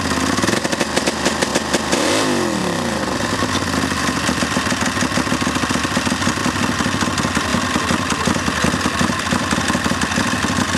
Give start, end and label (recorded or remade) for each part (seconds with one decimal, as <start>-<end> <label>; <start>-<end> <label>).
0.0-10.8 recorded